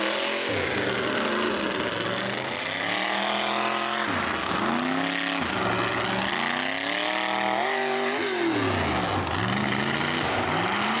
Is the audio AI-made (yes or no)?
no